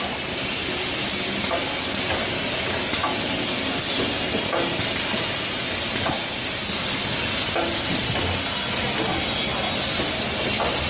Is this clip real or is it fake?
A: real